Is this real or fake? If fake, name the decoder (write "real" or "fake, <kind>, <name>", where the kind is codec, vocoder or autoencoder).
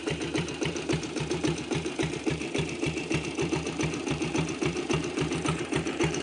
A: fake, vocoder, BigVGAN v2